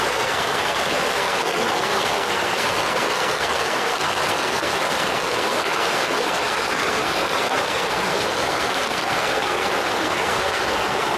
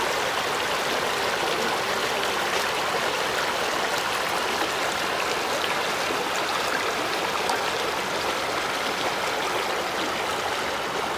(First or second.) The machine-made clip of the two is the first